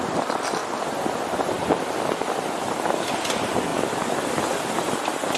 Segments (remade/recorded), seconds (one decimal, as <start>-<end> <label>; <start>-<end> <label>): 0.0-5.4 recorded